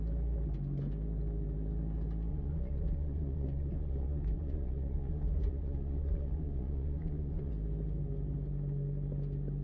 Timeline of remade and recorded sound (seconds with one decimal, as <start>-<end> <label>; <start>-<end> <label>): 0.0-2.3 recorded; 2.3-7.5 remade; 7.5-9.6 recorded